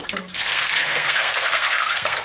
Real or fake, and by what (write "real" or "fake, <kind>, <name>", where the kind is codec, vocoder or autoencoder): fake, codec, SNAC